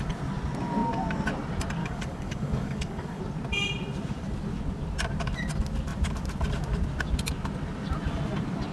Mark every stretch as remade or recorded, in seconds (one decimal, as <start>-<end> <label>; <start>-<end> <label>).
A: 0.0-1.8 recorded; 1.8-3.2 remade; 3.2-8.7 recorded